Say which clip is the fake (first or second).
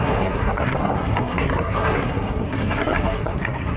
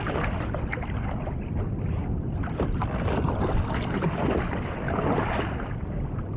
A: first